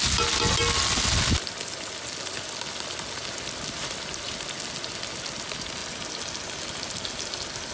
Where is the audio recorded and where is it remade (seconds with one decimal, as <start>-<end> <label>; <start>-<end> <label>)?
0.0-7.7 recorded

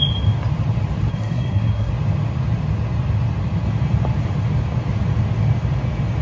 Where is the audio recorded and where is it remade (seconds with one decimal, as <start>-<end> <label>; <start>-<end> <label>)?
0.0-1.1 recorded; 1.1-1.9 remade; 1.9-6.2 recorded

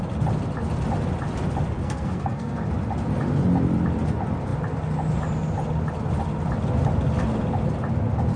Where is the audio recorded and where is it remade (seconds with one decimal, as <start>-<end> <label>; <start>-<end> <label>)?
0.0-1.8 recorded; 1.8-2.7 remade; 2.7-8.4 recorded

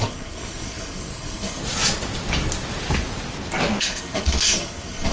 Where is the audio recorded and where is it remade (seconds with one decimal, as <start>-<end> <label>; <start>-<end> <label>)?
0.0-1.6 remade; 1.6-3.8 recorded; 3.8-5.1 remade

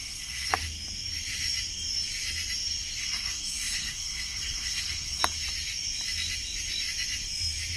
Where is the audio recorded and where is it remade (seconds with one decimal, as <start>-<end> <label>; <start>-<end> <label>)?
0.0-0.5 remade; 0.5-3.0 recorded; 3.0-5.2 remade; 5.2-7.8 recorded

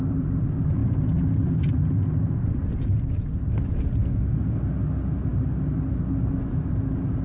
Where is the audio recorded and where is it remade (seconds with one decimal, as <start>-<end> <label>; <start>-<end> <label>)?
0.0-4.0 recorded; 4.0-4.6 remade; 4.6-7.2 recorded

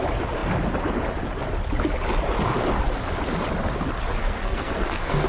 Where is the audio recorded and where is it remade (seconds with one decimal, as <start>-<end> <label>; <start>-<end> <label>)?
0.0-4.2 recorded; 4.2-5.3 remade